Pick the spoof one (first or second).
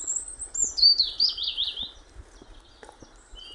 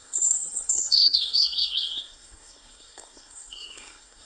second